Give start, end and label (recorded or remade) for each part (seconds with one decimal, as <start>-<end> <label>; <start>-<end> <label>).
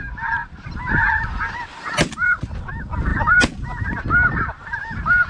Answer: 0.0-0.4 recorded; 0.4-1.1 remade; 1.1-1.7 recorded; 1.7-2.5 remade; 2.5-3.1 recorded; 3.1-5.3 remade